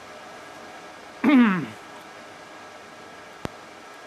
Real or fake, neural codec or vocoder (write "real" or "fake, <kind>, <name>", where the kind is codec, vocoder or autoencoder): real